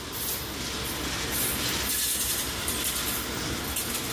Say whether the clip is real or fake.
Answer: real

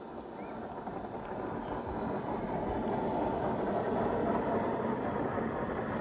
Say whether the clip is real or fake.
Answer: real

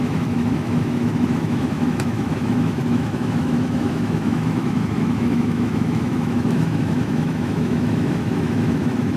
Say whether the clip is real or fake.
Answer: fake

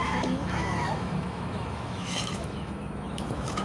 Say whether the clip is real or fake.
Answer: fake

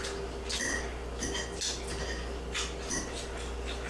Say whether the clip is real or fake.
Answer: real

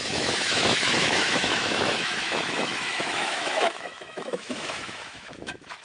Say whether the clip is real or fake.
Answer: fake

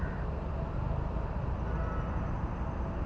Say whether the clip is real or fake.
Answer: real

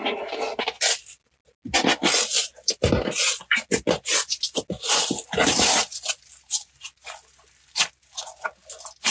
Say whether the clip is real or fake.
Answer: real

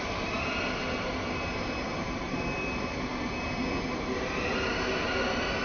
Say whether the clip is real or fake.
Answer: real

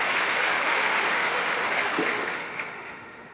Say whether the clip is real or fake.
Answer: fake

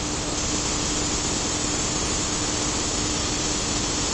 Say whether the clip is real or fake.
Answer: real